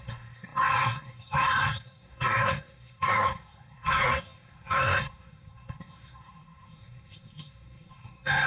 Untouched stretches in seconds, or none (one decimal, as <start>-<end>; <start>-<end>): none